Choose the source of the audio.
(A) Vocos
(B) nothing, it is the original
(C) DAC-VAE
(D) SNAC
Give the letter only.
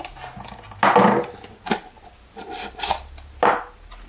B